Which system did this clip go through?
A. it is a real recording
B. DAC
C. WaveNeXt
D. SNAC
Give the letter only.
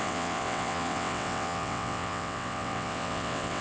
C